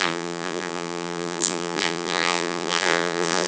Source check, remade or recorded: remade